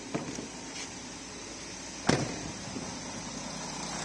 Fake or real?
real